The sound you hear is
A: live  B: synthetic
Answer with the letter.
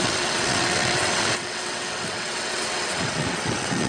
B